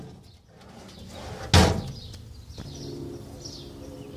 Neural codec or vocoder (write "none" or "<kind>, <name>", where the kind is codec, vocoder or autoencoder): none